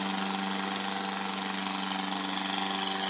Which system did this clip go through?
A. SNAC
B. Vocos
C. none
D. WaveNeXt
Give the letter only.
C